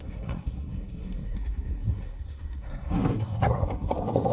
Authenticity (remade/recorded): remade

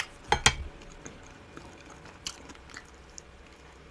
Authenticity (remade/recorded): recorded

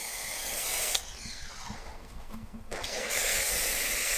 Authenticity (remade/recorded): remade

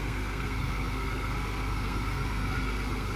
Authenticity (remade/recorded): remade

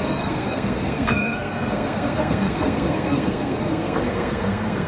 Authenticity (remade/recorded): remade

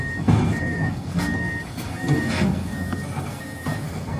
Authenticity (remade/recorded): remade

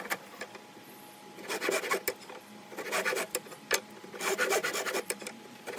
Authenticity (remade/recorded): recorded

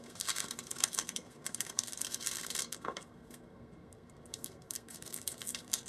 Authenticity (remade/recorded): remade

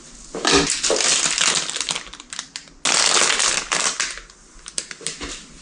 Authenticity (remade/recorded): recorded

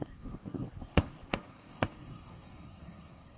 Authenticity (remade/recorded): remade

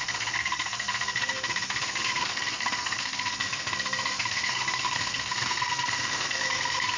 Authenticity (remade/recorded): remade